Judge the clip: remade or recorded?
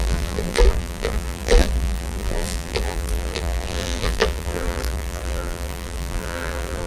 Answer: remade